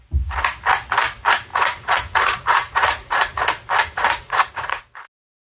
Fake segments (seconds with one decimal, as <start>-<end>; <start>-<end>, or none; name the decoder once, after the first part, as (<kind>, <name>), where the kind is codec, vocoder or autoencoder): 1.5-3.4 (vocoder, Vocos); 3.8-4.8